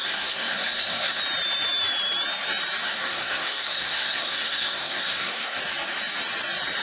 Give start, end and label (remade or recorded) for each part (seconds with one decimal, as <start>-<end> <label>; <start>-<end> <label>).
0.0-1.2 remade; 1.2-2.8 recorded; 2.8-5.6 remade; 5.6-6.8 recorded